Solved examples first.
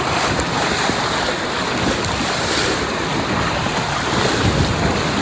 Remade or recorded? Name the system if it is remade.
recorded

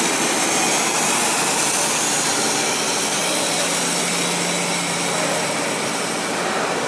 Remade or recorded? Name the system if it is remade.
recorded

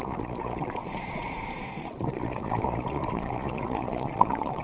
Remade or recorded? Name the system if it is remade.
remade, vocoder, Vocos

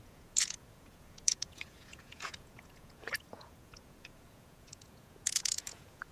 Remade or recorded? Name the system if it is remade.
remade, vocoder, Vocos